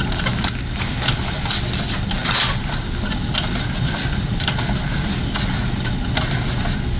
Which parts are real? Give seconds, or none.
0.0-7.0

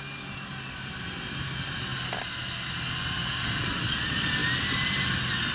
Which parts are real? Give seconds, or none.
0.0-5.5

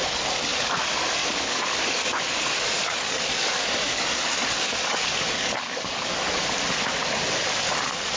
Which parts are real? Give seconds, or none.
0.0-1.2; 6.1-8.2

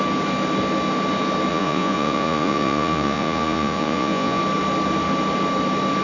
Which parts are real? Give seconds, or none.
0.0-1.5; 4.4-6.0

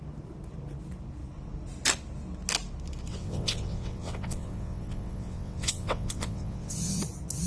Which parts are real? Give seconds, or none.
0.0-3.1; 7.0-7.5

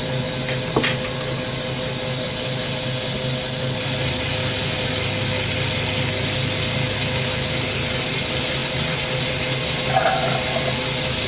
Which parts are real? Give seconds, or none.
0.0-11.3